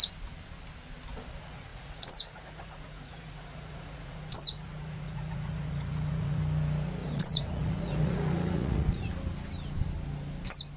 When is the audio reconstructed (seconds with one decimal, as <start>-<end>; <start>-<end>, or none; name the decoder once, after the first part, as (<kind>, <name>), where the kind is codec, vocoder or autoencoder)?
1.7-6.4 (vocoder, Vocos); 7.0-9.1